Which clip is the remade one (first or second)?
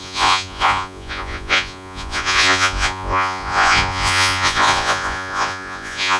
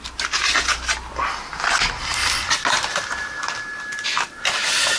first